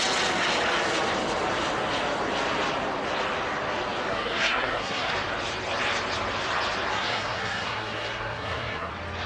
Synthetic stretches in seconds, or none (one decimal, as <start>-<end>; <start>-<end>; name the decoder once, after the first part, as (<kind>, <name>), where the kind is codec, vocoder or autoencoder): 4.1-5.1 (codec, SNAC); 6.9-8.9